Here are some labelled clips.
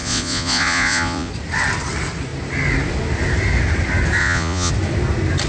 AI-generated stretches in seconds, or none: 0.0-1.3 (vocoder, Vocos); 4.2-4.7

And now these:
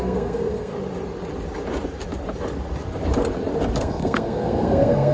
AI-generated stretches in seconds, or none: 0.0-0.7 (codec, SNAC); 3.8-5.1

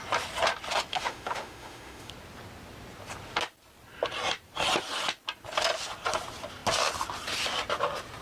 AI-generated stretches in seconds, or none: 0.9-2.1 (autoencoder, DAC-VAE)

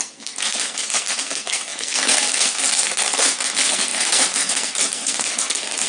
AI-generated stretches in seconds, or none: 0.0-5.9 (codec, SNAC)